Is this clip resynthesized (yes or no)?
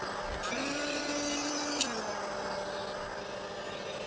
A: no